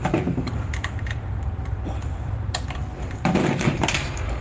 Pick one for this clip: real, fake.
fake